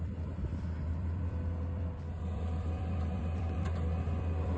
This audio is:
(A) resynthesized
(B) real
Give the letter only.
A